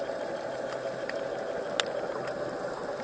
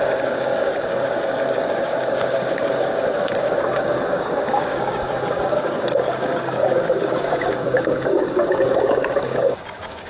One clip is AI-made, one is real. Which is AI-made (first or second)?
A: second